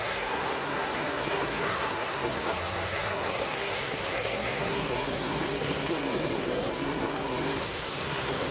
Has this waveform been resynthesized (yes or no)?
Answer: yes